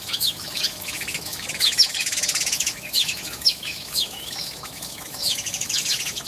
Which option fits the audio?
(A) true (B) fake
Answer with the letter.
B